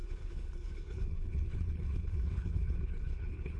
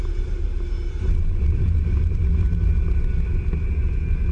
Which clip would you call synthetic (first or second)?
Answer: first